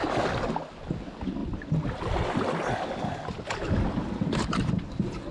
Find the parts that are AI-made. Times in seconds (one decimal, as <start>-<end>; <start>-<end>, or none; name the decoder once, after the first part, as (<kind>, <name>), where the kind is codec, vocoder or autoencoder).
none